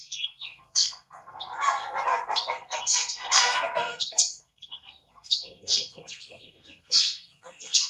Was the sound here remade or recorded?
remade